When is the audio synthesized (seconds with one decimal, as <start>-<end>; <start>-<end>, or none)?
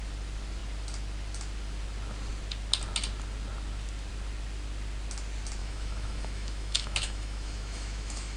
5.6-8.4